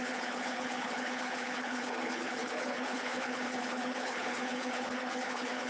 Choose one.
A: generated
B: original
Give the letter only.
A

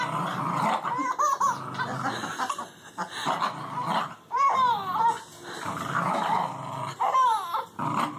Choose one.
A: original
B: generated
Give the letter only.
A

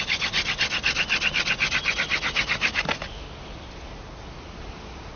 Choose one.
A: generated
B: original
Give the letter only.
B